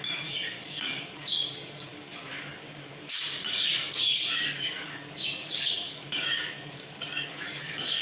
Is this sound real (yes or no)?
no